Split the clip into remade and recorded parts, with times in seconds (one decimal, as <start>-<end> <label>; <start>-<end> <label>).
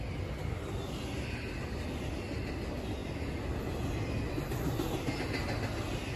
0.0-6.2 recorded